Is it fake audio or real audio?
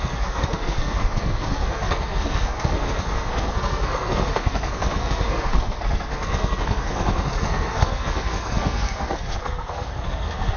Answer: fake